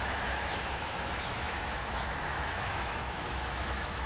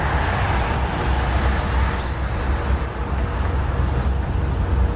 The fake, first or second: first